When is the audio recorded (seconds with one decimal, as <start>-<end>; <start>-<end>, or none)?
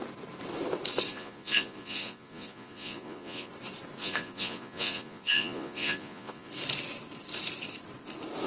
0.0-1.1; 3.5-4.0; 6.5-8.5